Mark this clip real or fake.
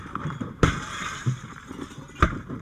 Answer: fake